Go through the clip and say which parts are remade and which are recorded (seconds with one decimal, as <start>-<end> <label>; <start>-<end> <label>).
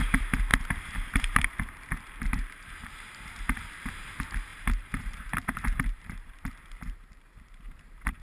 0.0-0.5 recorded; 0.5-4.1 remade; 4.1-4.5 recorded; 4.5-8.2 remade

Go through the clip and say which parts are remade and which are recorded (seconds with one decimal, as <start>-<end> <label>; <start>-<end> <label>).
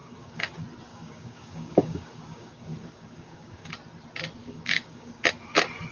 0.0-0.5 remade; 0.5-0.9 recorded; 0.9-3.7 remade; 3.7-4.4 recorded; 4.4-5.2 remade; 5.2-5.9 recorded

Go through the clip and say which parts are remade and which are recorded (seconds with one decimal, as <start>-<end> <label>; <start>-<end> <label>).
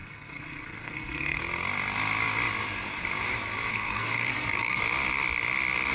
0.0-1.4 remade; 1.4-3.7 recorded; 3.7-4.8 remade; 4.8-5.9 recorded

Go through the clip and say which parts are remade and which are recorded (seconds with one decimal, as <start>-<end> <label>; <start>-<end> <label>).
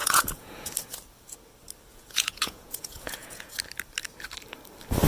0.0-0.7 remade; 0.7-1.9 recorded; 1.9-3.5 remade; 3.5-5.1 recorded